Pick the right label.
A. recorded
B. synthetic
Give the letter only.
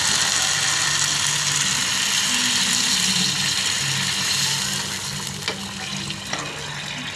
A